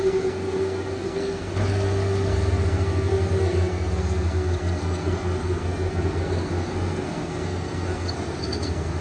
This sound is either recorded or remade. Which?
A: remade